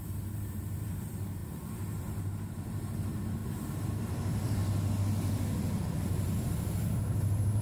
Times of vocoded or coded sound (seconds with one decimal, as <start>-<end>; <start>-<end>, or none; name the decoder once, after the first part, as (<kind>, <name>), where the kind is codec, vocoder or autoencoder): 0.0-4.6 (vocoder, BigVGAN v2); 5.8-7.6